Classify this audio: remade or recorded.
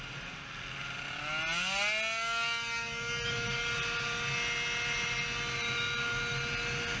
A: recorded